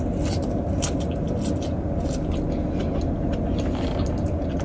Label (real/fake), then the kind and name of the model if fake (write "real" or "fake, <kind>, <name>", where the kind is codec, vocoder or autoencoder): real